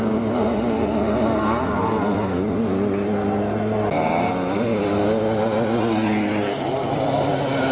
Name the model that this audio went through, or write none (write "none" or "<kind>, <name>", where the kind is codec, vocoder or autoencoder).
none